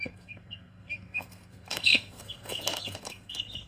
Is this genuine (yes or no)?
no